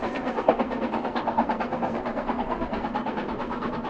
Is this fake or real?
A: fake